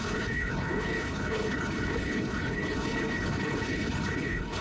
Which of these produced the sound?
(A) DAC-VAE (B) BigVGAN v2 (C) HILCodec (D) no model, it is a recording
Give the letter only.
C